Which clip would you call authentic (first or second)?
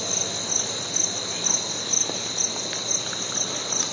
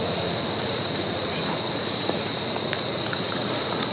first